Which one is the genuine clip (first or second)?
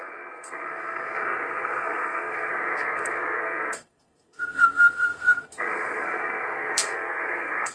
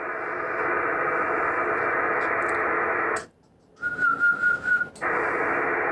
second